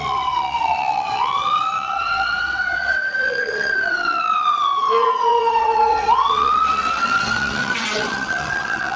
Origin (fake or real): fake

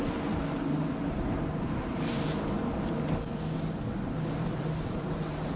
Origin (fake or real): real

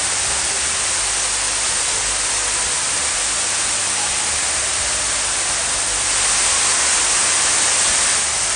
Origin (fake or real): real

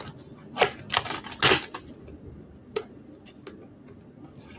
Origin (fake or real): real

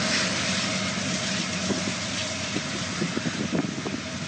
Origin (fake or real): fake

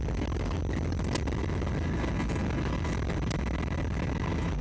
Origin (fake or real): real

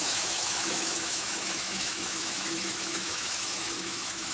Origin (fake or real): fake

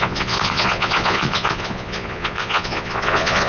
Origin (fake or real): fake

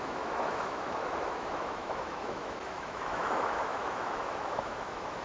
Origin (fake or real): fake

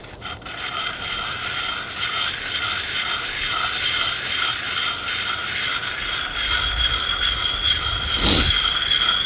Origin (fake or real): real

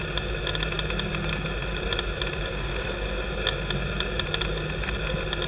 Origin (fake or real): real